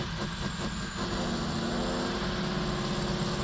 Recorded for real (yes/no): yes